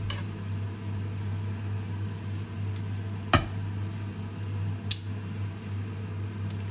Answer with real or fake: real